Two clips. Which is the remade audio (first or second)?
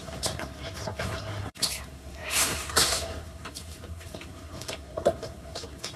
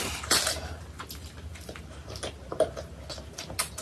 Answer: first